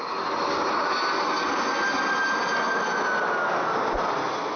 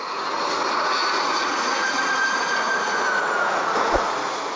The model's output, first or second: second